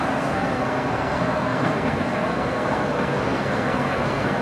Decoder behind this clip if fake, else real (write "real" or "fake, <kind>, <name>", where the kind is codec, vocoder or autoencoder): fake, codec, SNAC